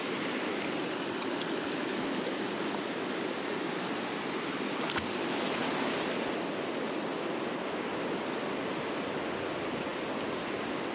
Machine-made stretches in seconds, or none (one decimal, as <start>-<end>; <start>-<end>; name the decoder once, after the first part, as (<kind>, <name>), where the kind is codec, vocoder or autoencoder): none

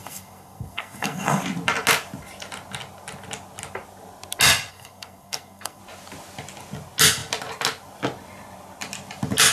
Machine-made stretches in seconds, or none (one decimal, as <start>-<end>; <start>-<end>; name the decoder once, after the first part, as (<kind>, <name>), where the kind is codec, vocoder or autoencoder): 0.0-1.4 (codec, SNAC); 4.7-5.8

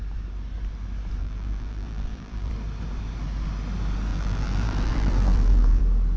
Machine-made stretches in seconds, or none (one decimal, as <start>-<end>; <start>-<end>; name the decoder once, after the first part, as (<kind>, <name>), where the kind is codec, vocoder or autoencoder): 1.2-2.5 (vocoder, BigVGAN v2); 4.1-5.8

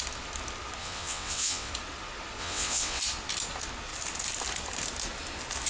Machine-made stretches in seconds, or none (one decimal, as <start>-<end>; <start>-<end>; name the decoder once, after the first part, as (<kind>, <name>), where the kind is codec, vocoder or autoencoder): 0.8-1.7 (vocoder, WaveNeXt); 2.4-3.0

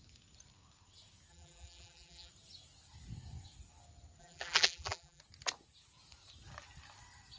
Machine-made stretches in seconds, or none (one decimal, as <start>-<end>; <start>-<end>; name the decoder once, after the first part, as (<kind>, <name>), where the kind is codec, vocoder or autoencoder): 1.3-2.3 (vocoder, BigVGAN v2); 4.2-5.2

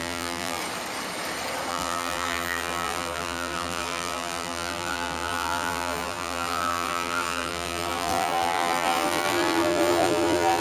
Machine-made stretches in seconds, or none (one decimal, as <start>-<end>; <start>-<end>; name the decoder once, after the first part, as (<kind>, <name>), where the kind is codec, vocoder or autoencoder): 0.0-0.6 (vocoder, BigVGAN v2); 1.7-10.6

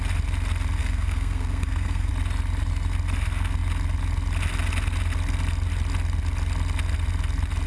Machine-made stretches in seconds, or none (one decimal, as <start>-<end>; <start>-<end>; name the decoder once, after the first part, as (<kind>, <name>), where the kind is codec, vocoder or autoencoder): 0.8-2.1 (codec, SNAC)

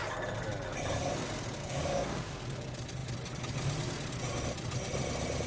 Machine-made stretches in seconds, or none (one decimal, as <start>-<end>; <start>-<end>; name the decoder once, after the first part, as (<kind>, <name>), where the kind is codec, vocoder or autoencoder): 1.6-2.2 (codec, DAC)